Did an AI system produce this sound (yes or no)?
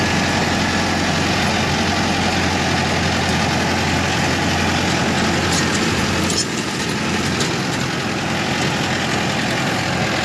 no